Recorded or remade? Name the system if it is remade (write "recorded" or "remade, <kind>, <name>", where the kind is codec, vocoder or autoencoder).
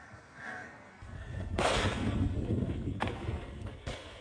remade, codec, SNAC